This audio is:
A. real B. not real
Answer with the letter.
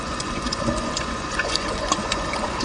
B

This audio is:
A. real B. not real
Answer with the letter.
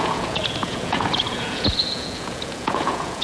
B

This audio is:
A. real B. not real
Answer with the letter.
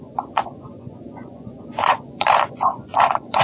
B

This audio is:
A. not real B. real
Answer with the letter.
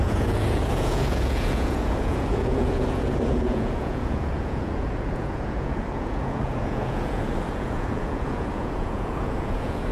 A